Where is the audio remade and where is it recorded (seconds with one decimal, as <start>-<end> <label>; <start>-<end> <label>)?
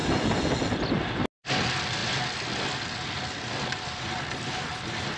0.0-5.2 recorded